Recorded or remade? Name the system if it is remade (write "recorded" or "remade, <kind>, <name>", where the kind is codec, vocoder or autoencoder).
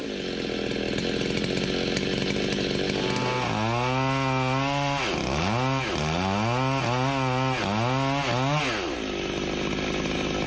recorded